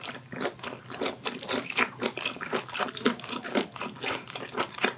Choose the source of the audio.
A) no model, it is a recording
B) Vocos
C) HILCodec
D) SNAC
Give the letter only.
A